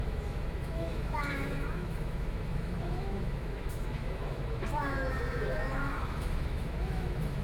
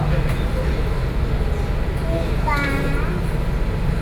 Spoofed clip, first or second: first